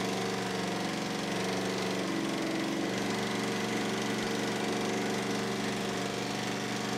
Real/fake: real